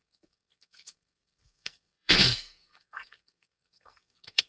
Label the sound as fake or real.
fake